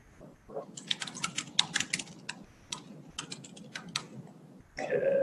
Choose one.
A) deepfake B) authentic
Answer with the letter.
B